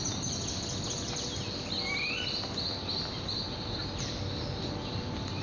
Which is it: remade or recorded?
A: recorded